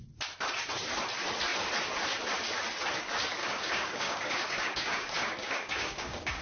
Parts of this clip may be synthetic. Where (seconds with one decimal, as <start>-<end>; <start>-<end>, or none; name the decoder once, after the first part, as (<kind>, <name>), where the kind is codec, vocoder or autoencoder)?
3.4-6.4 (codec, DAC)